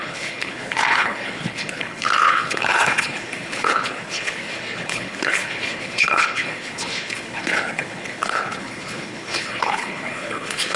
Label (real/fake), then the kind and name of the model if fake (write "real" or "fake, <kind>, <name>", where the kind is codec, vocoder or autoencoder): fake, codec, HILCodec